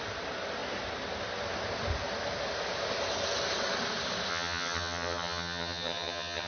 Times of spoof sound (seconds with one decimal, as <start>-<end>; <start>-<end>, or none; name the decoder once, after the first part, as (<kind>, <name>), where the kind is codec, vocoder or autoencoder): 4.3-6.5 (vocoder, HiFi-GAN)